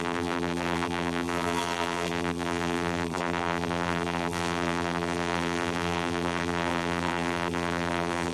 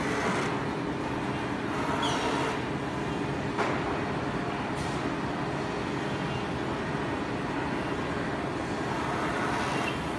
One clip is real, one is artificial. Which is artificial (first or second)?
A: first